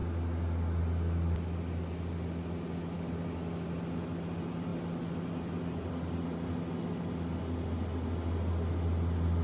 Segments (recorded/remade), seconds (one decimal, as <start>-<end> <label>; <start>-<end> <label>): 0.0-9.4 recorded